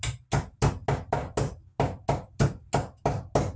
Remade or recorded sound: recorded